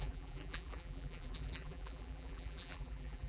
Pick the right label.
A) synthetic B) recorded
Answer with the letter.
A